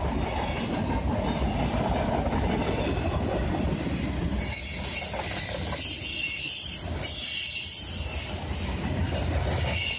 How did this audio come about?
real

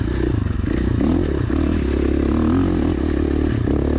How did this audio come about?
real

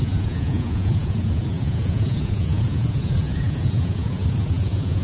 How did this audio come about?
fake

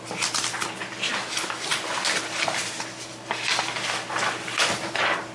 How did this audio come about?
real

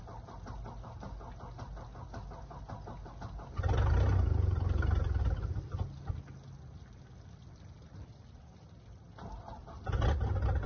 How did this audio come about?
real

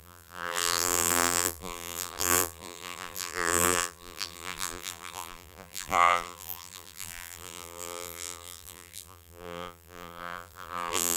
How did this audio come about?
fake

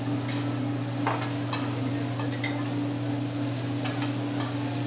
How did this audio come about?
real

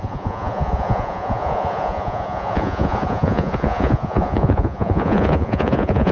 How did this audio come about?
fake